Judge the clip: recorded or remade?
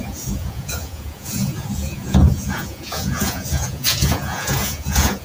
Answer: remade